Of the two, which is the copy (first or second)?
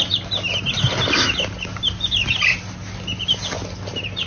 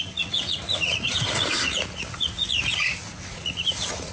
second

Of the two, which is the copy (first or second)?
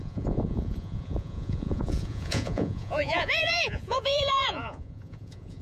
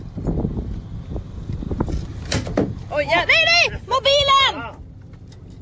first